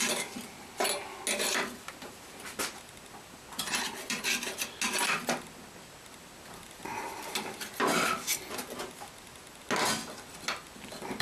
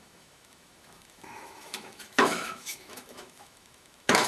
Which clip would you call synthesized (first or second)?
second